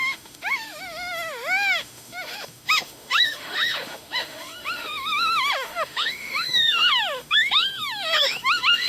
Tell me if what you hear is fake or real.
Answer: fake